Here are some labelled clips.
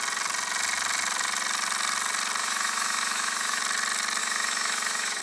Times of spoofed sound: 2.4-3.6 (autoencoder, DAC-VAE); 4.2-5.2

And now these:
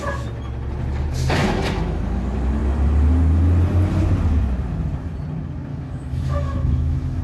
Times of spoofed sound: 1.4-2.0 (autoencoder, DAC-VAE); 5.7-7.2